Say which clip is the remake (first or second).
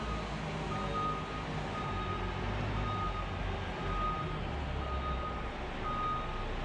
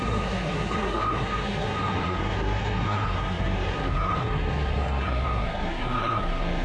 second